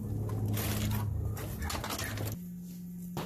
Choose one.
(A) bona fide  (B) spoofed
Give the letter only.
A